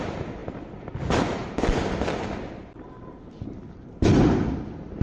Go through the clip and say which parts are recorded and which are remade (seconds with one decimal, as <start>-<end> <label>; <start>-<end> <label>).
0.0-5.0 recorded